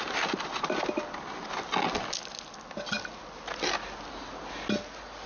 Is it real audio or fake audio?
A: real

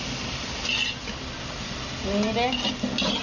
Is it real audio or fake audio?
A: real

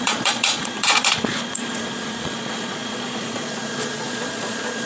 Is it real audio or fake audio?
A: fake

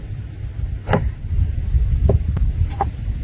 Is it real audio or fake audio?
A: real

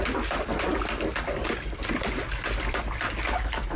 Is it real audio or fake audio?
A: real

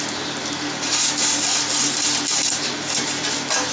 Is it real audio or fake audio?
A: real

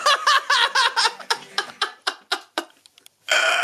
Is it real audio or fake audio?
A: fake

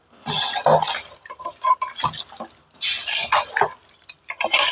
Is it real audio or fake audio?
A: real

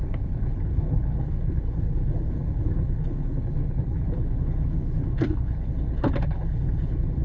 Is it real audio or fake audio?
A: fake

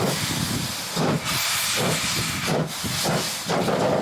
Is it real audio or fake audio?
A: real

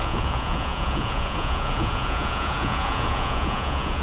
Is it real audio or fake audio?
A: fake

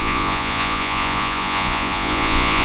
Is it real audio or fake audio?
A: fake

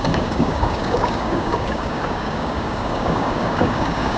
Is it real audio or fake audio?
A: fake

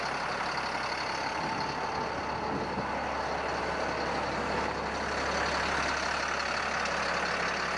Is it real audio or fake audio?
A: real